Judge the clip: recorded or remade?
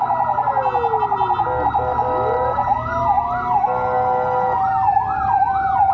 recorded